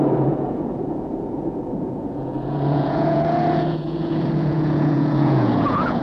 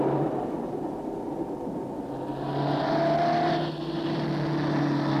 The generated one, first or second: first